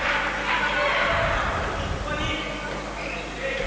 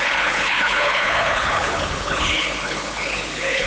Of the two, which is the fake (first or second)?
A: second